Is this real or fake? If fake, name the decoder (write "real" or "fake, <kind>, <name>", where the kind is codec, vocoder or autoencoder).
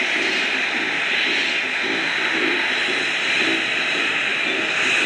real